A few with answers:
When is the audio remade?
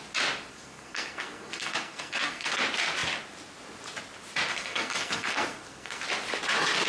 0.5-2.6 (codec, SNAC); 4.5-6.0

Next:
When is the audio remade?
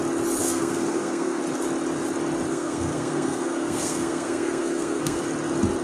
0.4-1.4 (codec, SNAC); 2.5-5.2